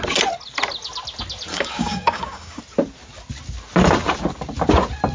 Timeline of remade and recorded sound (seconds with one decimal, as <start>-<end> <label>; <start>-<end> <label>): 0.0-1.5 recorded; 1.5-2.6 remade; 2.6-5.1 recorded